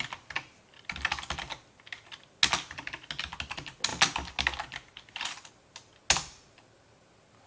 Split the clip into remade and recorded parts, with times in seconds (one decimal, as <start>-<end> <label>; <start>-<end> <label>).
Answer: 0.0-7.5 recorded

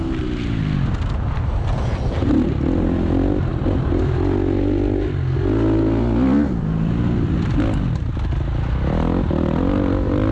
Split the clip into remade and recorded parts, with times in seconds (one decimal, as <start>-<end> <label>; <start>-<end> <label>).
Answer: 0.0-3.5 recorded; 3.5-4.0 remade; 4.0-10.3 recorded

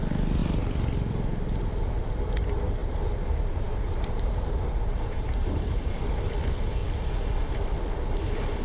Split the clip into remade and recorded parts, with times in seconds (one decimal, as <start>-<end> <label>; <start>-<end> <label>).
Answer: 0.0-2.8 recorded; 2.8-5.9 remade; 5.9-8.6 recorded

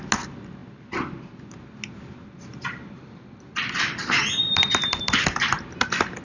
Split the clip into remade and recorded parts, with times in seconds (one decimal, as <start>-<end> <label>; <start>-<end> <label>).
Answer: 0.0-2.5 recorded; 2.5-5.6 remade; 5.6-6.2 recorded